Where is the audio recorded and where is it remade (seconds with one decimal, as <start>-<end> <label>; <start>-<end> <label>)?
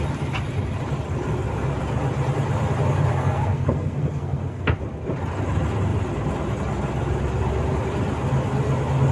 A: 0.0-3.1 recorded; 3.1-4.7 remade; 4.7-9.1 recorded